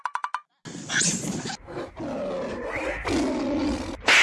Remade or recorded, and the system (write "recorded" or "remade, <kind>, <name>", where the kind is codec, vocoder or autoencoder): recorded